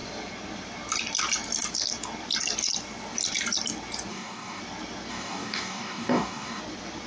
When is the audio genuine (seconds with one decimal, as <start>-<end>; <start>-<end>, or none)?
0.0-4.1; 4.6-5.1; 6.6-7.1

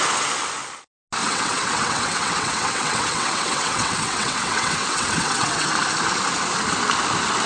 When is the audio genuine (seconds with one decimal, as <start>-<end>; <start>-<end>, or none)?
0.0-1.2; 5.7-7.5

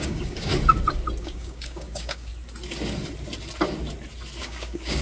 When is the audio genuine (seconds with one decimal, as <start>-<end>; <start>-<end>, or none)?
0.5-1.2; 2.3-4.4

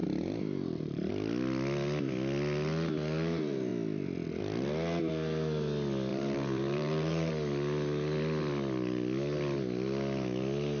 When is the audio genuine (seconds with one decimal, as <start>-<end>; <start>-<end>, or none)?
1.1-6.1; 7.3-10.8

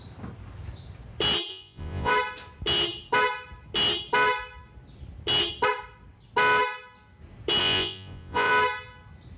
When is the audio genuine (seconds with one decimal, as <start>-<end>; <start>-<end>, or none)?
0.0-1.5; 2.1-7.6; 8.5-9.4

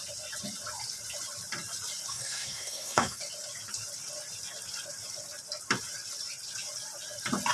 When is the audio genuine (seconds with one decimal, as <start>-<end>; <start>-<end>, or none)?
0.0-2.1; 3.2-7.5

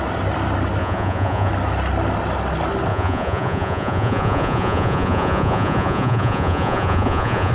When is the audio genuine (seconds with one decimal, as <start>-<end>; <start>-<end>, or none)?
0.0-0.8; 1.5-2.9

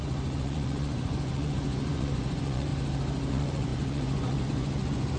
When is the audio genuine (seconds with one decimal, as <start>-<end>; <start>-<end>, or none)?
2.7-3.3